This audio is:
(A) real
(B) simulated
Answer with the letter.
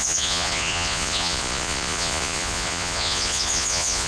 B